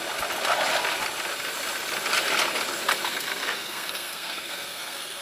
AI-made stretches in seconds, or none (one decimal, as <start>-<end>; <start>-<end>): 3.1-5.2